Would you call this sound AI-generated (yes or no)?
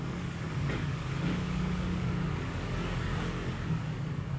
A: yes